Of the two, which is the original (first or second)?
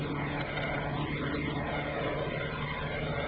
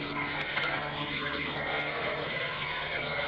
first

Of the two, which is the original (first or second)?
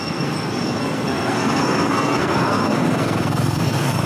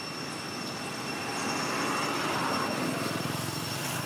second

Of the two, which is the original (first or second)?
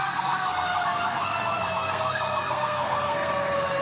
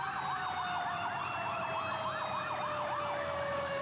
second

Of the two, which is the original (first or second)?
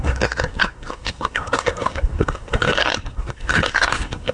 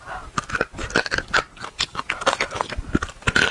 second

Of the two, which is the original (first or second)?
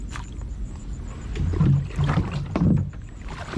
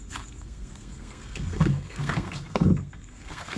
first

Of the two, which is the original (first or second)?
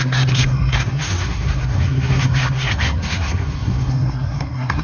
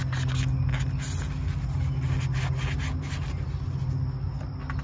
second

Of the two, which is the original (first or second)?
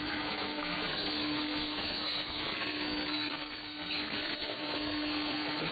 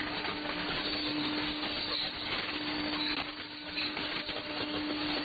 second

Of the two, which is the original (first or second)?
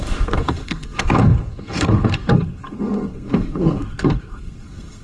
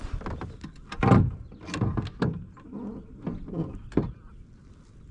second